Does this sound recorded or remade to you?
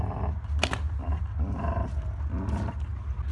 recorded